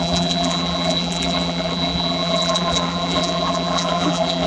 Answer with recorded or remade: remade